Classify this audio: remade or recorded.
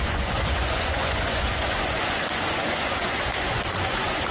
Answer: remade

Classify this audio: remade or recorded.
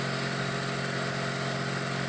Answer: recorded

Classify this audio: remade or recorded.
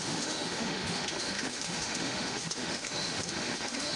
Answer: remade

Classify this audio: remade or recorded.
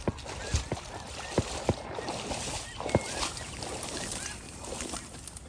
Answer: recorded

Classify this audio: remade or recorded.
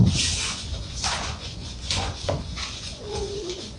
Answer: remade